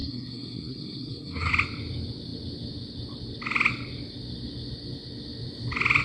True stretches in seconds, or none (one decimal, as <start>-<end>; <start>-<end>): 1.5-6.0